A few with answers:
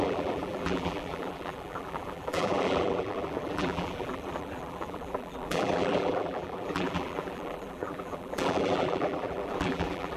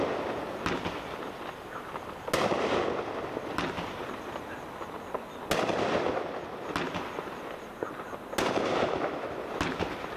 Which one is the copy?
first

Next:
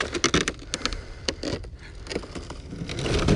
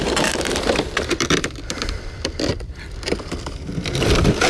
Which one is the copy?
second